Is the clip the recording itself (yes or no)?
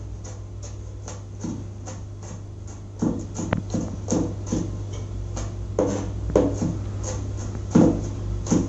yes